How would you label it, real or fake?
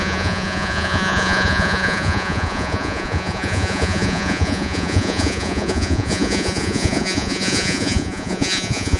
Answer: fake